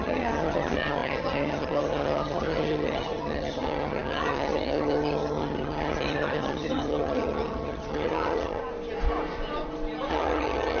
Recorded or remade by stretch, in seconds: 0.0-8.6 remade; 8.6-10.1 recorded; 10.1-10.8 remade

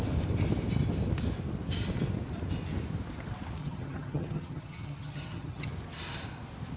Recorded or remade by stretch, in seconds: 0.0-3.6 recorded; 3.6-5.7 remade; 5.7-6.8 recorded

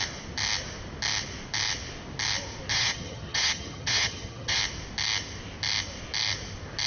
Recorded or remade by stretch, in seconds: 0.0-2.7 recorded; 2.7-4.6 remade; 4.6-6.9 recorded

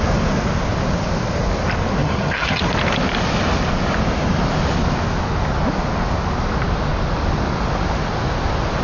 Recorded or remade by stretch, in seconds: 0.0-2.0 recorded; 2.0-2.6 remade; 2.6-8.8 recorded

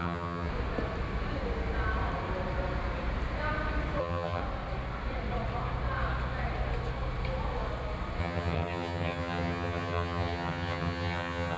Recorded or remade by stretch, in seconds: 0.0-0.5 remade; 0.5-4.0 recorded; 4.0-4.4 remade; 4.4-8.2 recorded; 8.2-11.6 remade

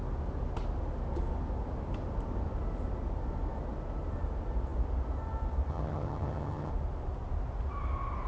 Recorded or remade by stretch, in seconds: 0.0-5.7 recorded; 5.7-6.7 remade; 6.7-8.3 recorded